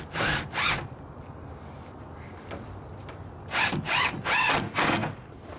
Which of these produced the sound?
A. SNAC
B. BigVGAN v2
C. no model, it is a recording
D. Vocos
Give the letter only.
C